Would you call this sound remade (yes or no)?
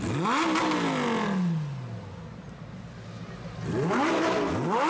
no